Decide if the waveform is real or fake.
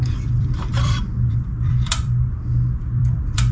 fake